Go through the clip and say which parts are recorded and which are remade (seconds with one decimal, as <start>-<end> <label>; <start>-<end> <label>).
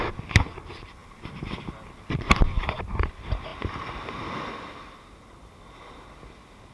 0.0-6.7 recorded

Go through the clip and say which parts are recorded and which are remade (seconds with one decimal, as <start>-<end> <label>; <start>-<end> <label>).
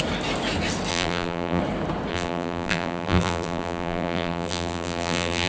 0.0-0.9 recorded; 0.9-1.6 remade; 1.6-2.1 recorded; 2.1-5.5 remade